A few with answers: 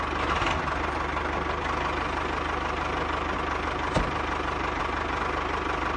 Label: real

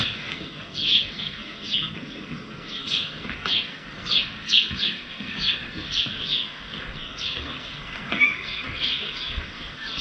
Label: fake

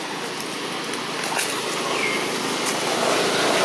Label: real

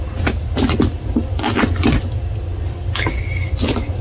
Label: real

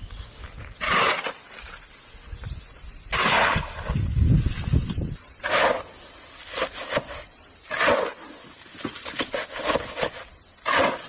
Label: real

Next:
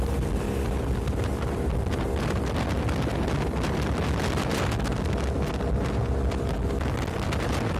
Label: real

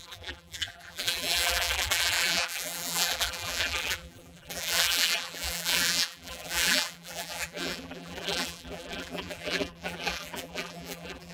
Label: fake